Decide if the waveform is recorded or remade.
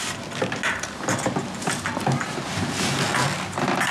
recorded